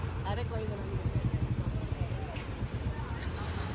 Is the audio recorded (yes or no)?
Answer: yes